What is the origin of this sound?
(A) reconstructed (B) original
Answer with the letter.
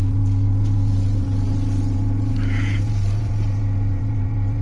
A